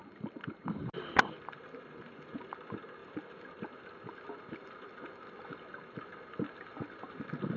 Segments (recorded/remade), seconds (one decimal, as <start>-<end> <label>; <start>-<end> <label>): 0.0-7.6 recorded